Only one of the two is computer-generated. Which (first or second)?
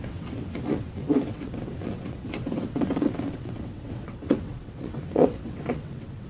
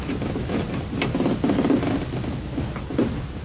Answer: first